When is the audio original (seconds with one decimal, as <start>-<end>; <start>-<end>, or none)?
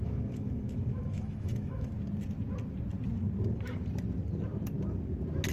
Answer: 1.9-5.5